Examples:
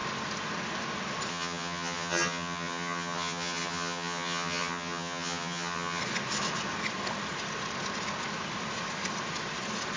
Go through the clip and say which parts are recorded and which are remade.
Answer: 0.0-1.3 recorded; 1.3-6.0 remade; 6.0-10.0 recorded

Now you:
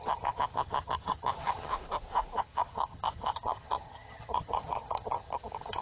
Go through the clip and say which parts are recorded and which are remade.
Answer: 0.0-1.7 remade; 1.7-2.4 recorded; 2.4-5.8 remade

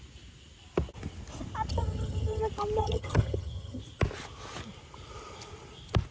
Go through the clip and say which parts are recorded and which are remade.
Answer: 0.0-1.7 recorded; 1.7-2.4 remade; 2.4-2.8 recorded; 2.8-3.8 remade; 3.8-6.1 recorded